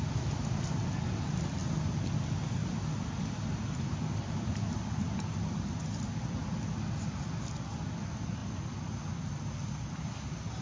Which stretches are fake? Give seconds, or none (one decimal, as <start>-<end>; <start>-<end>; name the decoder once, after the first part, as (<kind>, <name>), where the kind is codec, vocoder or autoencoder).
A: none